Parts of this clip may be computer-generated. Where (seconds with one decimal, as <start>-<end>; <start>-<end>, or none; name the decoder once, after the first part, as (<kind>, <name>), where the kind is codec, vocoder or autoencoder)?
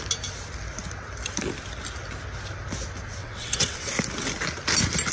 3.2-3.9 (vocoder, WaveNeXt)